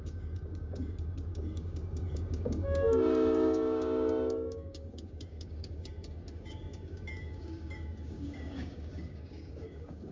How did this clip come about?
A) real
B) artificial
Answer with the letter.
B